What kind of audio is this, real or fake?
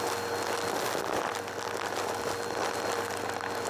real